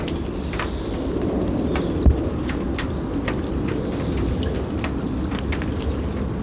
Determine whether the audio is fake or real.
fake